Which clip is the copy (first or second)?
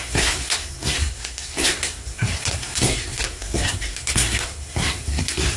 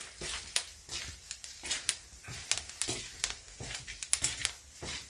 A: first